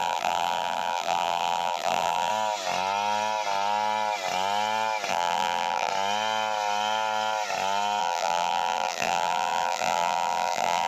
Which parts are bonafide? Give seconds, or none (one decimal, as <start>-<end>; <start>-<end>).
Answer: 2.3-5.1; 5.9-8.0